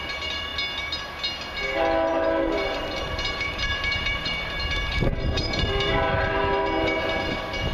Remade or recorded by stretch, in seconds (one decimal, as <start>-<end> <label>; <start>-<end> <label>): 0.0-2.1 recorded; 2.1-6.4 remade; 6.4-7.7 recorded

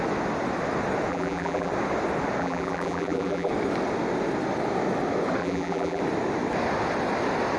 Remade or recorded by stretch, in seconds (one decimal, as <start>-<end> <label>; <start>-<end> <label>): 0.0-1.1 recorded; 1.1-1.7 remade; 1.7-2.4 recorded; 2.4-3.5 remade; 3.5-5.4 recorded; 5.4-6.0 remade; 6.0-7.6 recorded